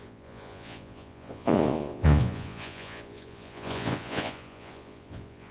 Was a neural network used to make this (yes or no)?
yes